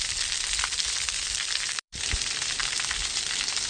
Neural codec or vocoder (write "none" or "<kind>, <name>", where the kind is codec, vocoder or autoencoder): vocoder, BigVGAN v2